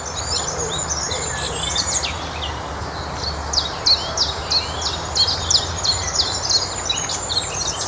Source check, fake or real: real